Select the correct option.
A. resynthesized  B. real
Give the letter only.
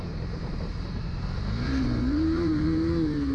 A